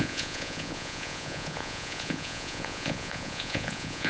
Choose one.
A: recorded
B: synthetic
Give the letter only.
B